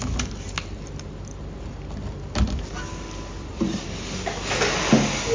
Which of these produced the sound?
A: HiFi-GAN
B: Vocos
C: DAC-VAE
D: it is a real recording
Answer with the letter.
D